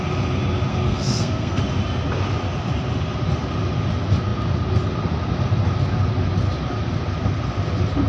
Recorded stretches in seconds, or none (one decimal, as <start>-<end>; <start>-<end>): 0.0-0.7; 1.6-8.1